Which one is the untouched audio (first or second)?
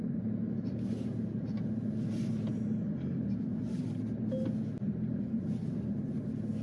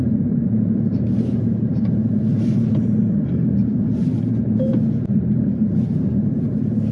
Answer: first